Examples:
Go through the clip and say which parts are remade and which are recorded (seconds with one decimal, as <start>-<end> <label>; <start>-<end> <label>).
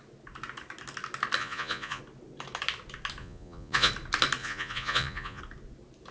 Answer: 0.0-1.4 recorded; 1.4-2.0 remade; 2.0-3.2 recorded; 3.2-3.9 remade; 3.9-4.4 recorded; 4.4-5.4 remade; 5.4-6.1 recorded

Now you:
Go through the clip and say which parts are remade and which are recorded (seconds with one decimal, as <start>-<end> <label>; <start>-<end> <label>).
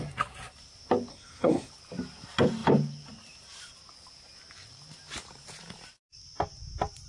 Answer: 0.0-1.1 recorded; 1.1-1.7 remade; 1.7-7.1 recorded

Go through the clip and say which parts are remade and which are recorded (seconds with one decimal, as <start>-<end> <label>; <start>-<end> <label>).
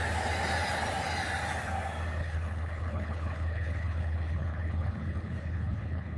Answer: 0.0-2.2 recorded; 2.2-6.2 remade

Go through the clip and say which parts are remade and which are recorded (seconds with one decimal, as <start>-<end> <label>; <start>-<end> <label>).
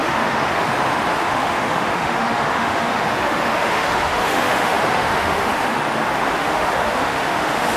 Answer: 0.0-0.7 remade; 0.7-1.1 recorded; 1.1-5.8 remade; 5.8-6.4 recorded; 6.4-7.8 remade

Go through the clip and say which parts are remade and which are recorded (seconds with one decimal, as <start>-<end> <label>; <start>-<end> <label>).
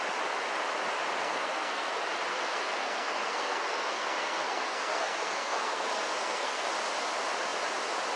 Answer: 0.0-1.2 recorded; 1.2-1.9 remade; 1.9-2.3 recorded; 2.3-6.7 remade; 6.7-8.2 recorded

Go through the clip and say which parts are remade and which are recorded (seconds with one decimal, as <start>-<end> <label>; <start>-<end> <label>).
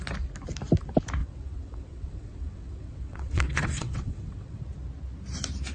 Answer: 0.0-1.2 recorded; 1.2-4.6 remade; 4.6-5.7 recorded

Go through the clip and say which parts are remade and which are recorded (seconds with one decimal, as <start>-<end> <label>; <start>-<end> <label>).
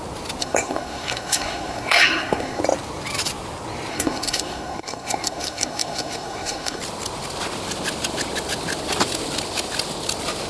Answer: 0.0-0.4 recorded; 0.4-2.6 remade; 2.6-3.9 recorded; 3.9-6.8 remade; 6.8-10.5 recorded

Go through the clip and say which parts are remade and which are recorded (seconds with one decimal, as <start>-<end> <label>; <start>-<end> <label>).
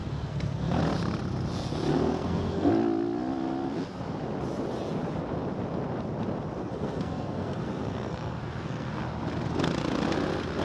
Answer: 0.0-0.8 remade; 0.8-1.9 recorded; 1.9-2.7 remade; 2.7-6.6 recorded; 6.6-9.0 remade; 9.0-10.6 recorded